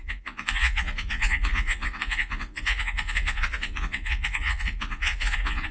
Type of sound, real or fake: fake